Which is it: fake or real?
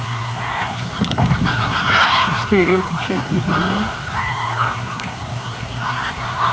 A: fake